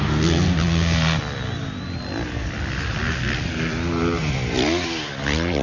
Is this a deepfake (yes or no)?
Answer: no